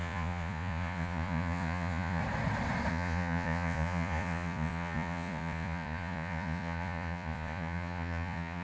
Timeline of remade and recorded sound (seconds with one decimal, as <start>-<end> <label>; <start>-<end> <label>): 0.0-2.2 remade; 2.2-2.9 recorded; 2.9-8.6 remade